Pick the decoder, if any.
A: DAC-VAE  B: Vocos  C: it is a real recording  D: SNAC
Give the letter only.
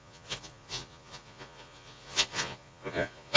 B